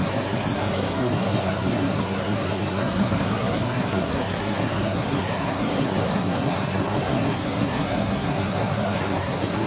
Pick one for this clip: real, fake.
fake